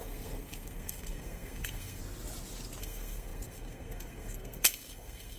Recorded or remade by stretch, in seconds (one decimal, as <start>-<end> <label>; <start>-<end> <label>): 0.0-2.0 remade; 2.0-2.8 recorded; 2.8-5.4 remade